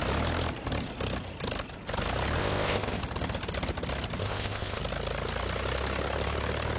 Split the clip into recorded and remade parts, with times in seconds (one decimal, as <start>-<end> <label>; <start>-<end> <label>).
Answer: 0.0-2.4 recorded; 2.4-3.0 remade; 3.0-4.2 recorded; 4.2-4.8 remade; 4.8-6.8 recorded